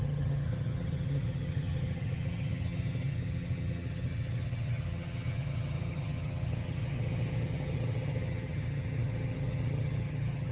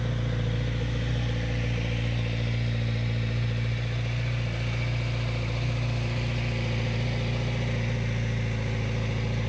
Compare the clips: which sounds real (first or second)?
second